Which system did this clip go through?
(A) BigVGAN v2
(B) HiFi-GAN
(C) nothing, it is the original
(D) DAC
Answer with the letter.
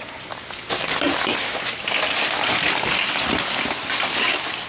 C